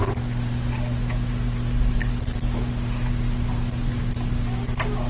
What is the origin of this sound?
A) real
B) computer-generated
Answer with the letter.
A